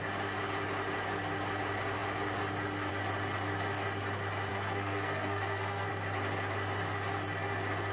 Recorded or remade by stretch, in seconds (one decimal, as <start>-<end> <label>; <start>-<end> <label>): 0.0-4.5 recorded; 4.5-5.9 remade; 5.9-7.9 recorded